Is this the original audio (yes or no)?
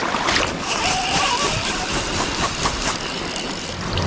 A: yes